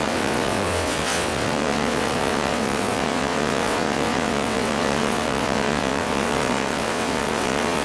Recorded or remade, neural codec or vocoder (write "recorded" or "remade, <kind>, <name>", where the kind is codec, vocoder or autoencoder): remade, vocoder, WaveNeXt